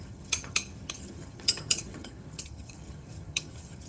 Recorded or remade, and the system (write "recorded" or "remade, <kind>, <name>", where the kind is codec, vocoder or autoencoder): remade, vocoder, HiFi-GAN